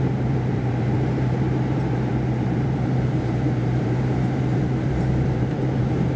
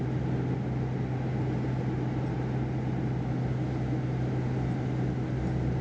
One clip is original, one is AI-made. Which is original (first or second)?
second